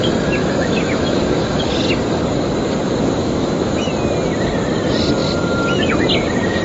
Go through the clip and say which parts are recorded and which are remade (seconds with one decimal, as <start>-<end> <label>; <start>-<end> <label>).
0.0-0.4 recorded; 0.4-1.6 remade; 1.6-3.2 recorded; 3.2-3.9 remade; 3.9-6.6 recorded